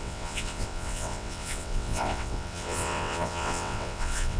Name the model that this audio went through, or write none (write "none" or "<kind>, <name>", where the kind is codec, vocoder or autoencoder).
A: vocoder, WaveNeXt